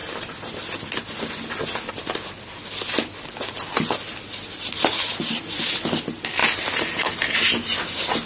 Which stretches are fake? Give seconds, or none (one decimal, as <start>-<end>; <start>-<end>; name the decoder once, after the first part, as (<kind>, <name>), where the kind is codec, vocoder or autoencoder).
none